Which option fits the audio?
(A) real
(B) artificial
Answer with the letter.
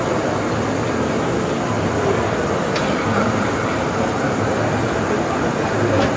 A